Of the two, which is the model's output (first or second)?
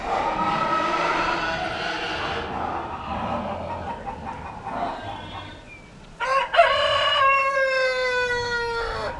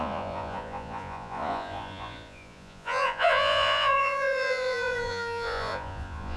second